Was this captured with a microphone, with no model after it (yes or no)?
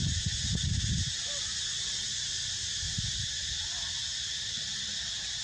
yes